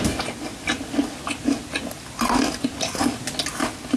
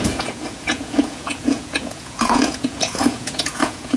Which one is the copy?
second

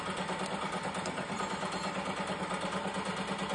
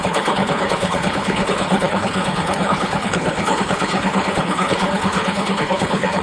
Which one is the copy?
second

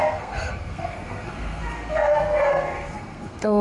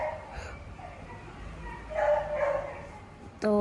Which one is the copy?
first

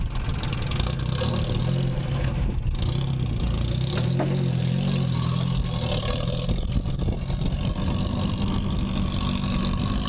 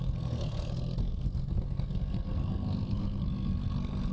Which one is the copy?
second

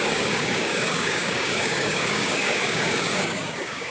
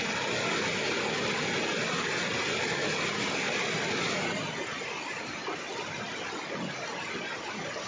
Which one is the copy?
first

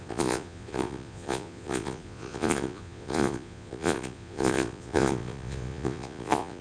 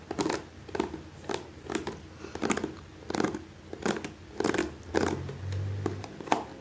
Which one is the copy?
first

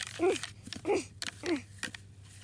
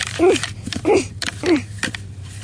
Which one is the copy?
second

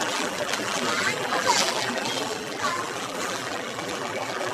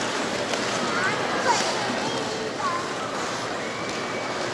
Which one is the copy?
first